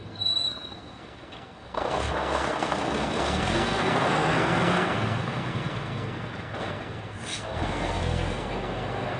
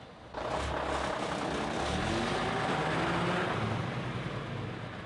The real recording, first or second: second